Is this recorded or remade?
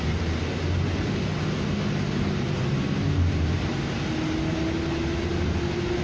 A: recorded